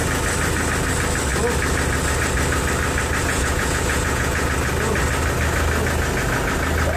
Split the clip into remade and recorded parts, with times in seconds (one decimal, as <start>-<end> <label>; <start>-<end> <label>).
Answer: 0.0-3.2 recorded; 3.2-4.5 remade; 4.5-7.0 recorded